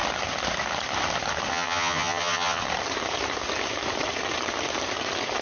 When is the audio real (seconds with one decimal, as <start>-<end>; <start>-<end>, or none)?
0.0-1.5; 2.6-5.4